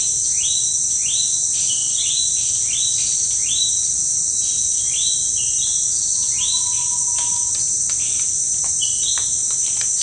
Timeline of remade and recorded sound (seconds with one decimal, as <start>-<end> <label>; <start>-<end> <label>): 0.0-10.0 recorded